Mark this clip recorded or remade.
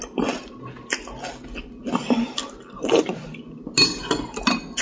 recorded